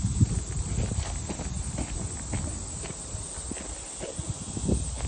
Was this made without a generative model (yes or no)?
yes